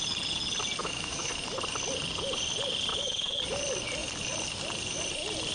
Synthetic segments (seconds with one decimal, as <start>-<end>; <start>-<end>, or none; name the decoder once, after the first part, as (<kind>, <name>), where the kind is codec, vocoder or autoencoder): 0.8-1.3 (autoencoder, DAC-VAE); 2.9-3.4